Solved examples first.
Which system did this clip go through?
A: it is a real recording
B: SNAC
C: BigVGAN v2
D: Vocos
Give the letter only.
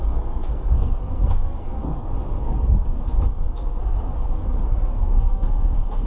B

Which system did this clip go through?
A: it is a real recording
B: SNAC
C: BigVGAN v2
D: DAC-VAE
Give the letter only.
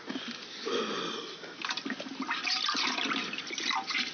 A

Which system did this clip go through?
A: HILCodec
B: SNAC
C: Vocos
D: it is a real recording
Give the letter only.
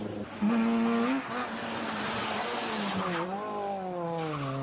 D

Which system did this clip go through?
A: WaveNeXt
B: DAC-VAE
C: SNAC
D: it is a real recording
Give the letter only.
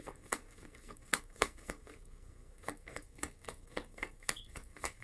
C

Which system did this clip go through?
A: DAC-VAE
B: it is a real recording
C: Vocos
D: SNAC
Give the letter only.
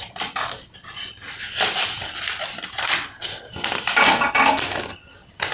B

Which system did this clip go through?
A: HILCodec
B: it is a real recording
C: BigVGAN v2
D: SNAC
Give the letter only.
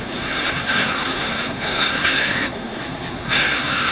D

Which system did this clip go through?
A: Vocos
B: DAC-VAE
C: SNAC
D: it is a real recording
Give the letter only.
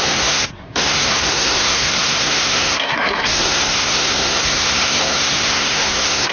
C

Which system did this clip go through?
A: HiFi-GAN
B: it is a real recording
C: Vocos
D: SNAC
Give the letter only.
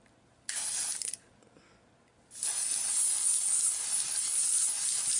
B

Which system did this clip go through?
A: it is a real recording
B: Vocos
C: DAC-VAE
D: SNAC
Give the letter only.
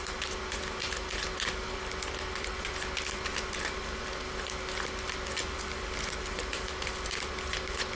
A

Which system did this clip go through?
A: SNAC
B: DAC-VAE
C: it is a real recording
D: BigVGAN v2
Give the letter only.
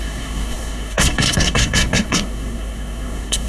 A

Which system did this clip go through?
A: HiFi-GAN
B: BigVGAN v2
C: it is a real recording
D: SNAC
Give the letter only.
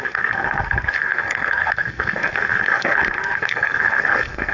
D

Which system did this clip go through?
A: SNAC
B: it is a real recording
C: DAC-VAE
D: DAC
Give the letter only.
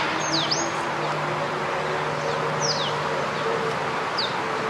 B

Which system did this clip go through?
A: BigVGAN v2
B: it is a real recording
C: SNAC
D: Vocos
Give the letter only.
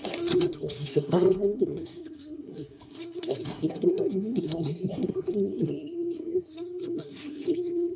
C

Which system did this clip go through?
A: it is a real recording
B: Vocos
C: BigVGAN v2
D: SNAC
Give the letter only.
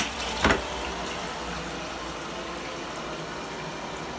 A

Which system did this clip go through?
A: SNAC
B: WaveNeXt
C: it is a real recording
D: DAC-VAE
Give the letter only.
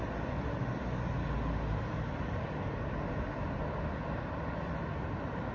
C